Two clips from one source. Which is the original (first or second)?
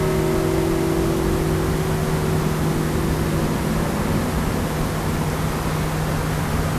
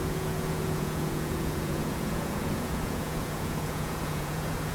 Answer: first